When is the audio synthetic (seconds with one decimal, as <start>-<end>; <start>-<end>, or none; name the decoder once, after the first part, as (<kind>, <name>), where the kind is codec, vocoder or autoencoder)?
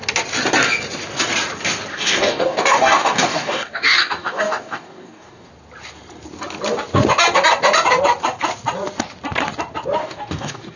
1.9-5.5 (codec, DAC); 10.0-10.8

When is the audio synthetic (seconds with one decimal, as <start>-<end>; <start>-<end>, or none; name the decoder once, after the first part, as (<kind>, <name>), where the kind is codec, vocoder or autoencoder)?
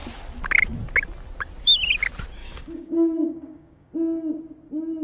2.4-3.9 (codec, DAC)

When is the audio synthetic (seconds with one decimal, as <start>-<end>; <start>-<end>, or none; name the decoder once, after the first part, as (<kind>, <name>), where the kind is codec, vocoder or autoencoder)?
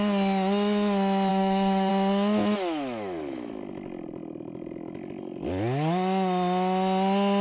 1.3-1.9 (codec, DAC)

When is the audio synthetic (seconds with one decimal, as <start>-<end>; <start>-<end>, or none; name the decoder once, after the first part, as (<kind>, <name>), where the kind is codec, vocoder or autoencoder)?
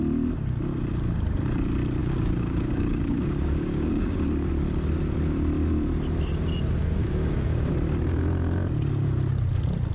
2.0-4.5 (codec, DAC); 7.0-7.7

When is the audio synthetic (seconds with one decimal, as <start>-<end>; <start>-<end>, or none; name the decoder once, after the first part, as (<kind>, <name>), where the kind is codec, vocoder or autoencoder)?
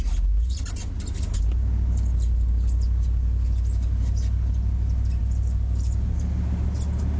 none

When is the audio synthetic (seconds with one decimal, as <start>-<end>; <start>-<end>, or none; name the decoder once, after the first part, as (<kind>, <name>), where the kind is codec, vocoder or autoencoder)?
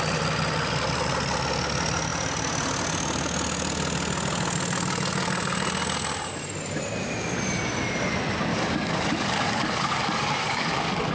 8.5-11.1 (codec, DAC)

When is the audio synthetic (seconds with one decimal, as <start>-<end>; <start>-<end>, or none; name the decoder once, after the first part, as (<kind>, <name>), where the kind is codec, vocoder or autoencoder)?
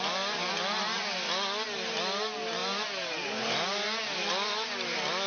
none